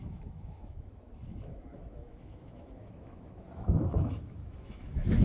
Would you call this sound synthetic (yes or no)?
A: yes